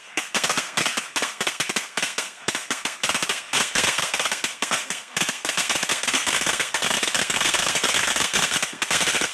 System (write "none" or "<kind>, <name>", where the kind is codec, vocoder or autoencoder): codec, SNAC